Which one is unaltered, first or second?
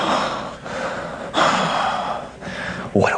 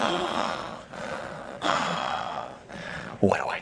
first